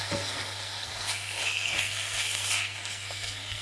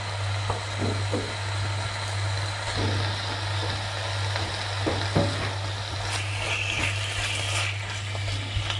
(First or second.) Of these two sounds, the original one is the second